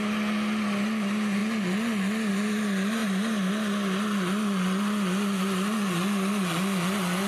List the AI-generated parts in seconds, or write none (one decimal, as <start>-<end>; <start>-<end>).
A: 3.0-3.5

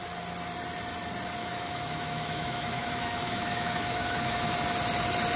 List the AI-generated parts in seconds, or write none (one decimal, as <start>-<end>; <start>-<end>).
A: 1.4-4.6

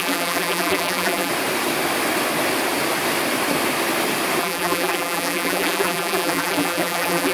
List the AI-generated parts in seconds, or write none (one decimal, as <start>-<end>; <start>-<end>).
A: 0.0-1.3; 4.4-7.3